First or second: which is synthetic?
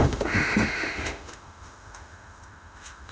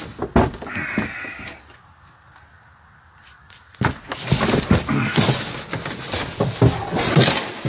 first